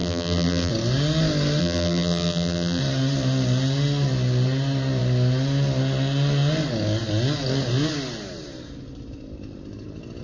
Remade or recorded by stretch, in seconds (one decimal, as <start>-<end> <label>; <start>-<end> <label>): 0.0-0.7 remade; 0.7-1.6 recorded; 1.6-2.8 remade; 2.8-10.2 recorded